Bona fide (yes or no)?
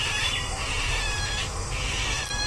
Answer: yes